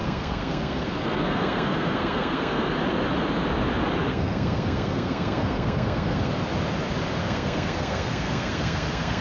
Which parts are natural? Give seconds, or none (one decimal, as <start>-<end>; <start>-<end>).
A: 2.7-4.1; 6.3-7.2